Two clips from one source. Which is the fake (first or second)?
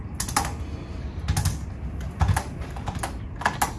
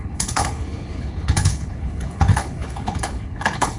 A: second